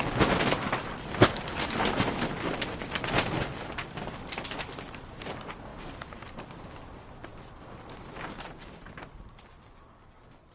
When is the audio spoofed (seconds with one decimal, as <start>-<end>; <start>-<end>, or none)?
5.7-6.6